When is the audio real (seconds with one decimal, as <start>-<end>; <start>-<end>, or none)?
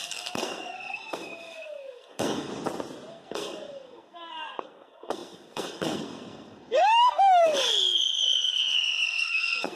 2.5-3.1